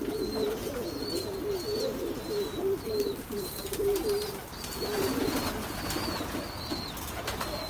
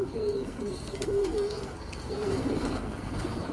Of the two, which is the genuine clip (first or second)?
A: first